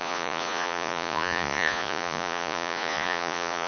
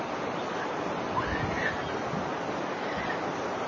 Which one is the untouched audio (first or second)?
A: second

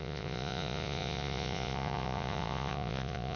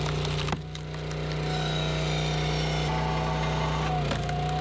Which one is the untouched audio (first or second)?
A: second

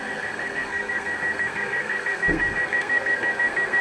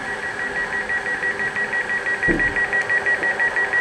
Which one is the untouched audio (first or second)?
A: second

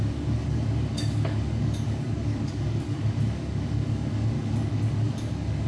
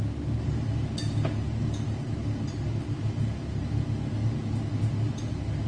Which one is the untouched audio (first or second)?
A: second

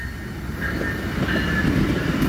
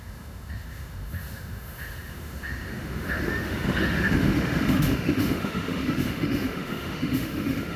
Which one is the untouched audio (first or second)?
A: first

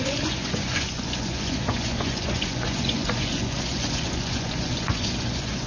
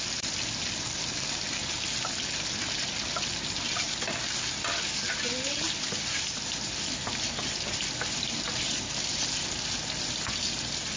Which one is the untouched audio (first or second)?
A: second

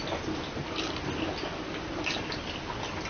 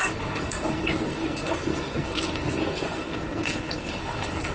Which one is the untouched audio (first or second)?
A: first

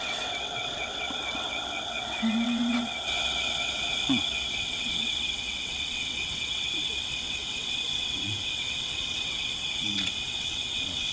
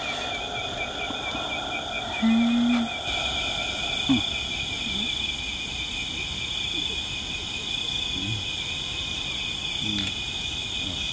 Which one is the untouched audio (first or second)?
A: second